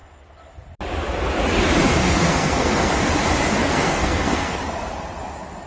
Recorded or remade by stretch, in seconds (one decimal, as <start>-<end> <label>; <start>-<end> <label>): 0.0-2.0 recorded; 2.0-2.9 remade; 2.9-3.6 recorded; 3.6-4.6 remade; 4.6-5.7 recorded